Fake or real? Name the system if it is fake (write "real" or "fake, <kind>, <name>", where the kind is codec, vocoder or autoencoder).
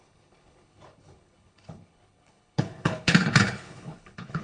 fake, codec, HILCodec